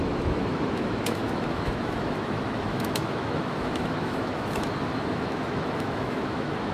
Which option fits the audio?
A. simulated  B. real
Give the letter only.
A